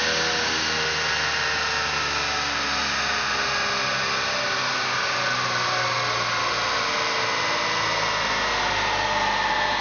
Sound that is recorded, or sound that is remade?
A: remade